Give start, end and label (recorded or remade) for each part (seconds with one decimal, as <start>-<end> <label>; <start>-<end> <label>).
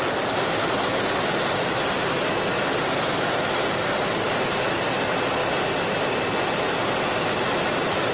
0.0-8.1 recorded